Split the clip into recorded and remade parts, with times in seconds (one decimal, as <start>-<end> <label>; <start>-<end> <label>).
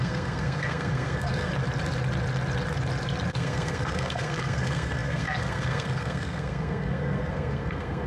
0.0-1.5 remade; 1.5-3.3 recorded; 3.3-8.1 remade